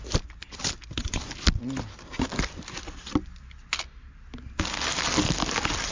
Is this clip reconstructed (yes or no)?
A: no